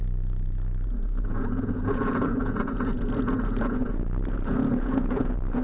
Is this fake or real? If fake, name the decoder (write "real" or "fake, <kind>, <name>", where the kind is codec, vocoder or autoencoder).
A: fake, vocoder, Vocos